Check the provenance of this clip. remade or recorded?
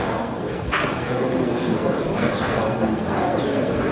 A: remade